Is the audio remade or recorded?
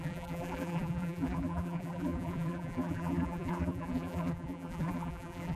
remade